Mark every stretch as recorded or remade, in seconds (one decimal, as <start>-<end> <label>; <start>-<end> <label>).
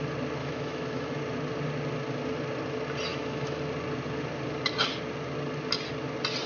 0.0-0.4 recorded; 0.4-1.1 remade; 1.1-3.1 recorded; 3.1-3.6 remade; 3.6-6.5 recorded